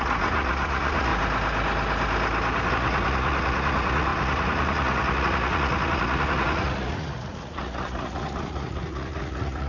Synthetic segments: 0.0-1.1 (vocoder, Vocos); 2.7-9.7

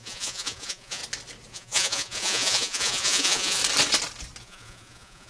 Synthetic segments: 0.0-1.0 (vocoder, Vocos); 1.5-3.6; 4.4-5.3

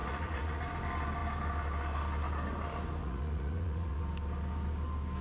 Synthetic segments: 0.0-0.6 (vocoder, Vocos); 3.0-4.0

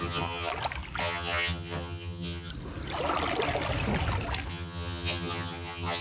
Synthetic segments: 0.0-0.5 (vocoder, HiFi-GAN); 1.0-2.5; 4.5-6.0

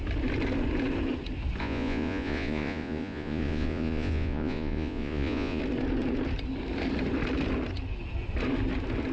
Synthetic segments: 1.6-5.6 (vocoder, Vocos)

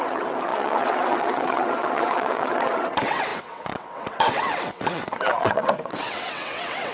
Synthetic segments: 0.0-6.9 (vocoder, WaveNeXt)

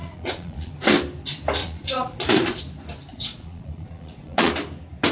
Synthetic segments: 0.0-0.7 (vocoder, Vocos); 1.6-2.6; 3.1-4.5

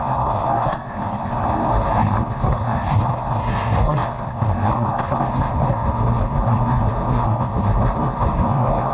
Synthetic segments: 0.0-8.9 (codec, SNAC)